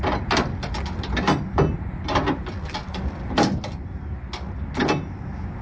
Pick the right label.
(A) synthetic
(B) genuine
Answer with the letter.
B